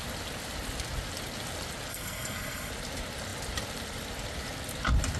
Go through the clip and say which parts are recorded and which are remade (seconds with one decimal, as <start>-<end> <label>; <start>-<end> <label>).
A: 0.0-1.9 recorded; 1.9-2.7 remade; 2.7-5.2 recorded